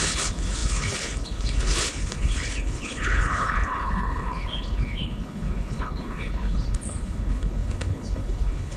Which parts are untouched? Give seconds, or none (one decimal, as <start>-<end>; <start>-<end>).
none